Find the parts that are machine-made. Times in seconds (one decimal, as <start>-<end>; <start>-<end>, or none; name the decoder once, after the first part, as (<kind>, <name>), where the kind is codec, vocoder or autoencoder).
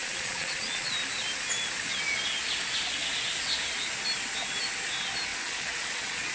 0.0-0.9 (vocoder, Vocos); 5.3-6.3